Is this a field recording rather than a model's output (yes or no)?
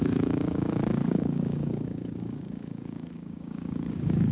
no